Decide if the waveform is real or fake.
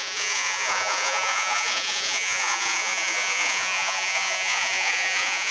fake